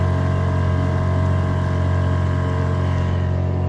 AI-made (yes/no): no